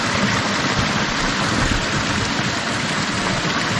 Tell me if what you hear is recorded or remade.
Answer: recorded